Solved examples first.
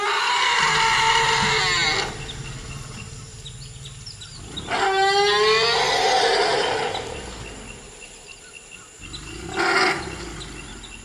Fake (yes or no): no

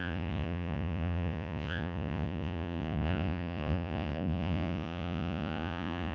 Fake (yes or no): yes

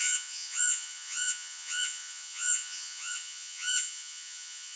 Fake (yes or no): yes